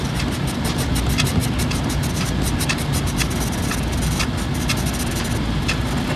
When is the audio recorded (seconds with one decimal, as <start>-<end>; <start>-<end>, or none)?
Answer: 0.0-6.2